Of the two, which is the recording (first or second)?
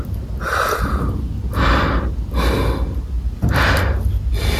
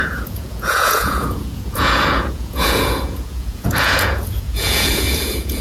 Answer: first